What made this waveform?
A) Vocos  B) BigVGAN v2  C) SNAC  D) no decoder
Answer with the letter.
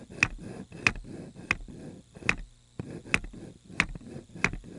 D